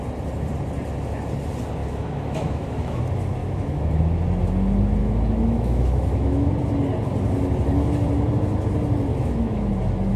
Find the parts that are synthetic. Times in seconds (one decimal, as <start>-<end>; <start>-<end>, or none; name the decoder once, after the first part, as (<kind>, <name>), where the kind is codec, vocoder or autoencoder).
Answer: 1.8-3.0 (autoencoder, DAC-VAE); 3.4-4.0; 5.0-6.5; 9.1-9.7